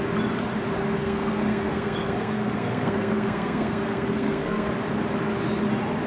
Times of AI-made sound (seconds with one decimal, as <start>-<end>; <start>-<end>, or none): 1.0-4.7